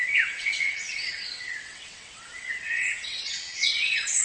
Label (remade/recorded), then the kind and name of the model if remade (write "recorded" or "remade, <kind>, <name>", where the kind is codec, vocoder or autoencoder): remade, vocoder, WaveNeXt